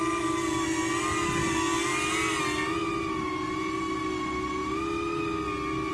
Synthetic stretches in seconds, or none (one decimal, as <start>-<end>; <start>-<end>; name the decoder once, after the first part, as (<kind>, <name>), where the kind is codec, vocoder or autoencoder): none